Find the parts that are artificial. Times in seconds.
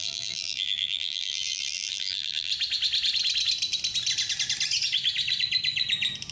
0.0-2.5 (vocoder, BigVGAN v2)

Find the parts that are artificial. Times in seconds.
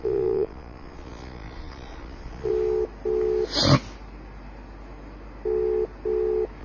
0.0-2.5 (vocoder, Vocos)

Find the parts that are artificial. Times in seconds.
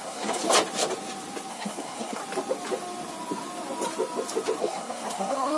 0.0-0.4 (codec, SNAC); 1.5-2.2; 4.6-5.6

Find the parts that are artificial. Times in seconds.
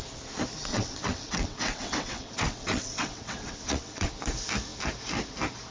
0.7-4.1 (vocoder, WaveNeXt)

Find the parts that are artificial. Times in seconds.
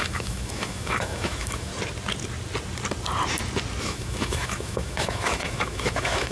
0.0-1.7 (autoencoder, DAC-VAE); 3.8-6.3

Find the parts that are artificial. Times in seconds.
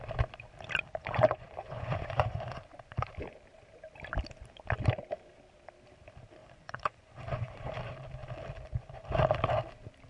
1.0-3.1 (vocoder, Vocos); 6.4-7.7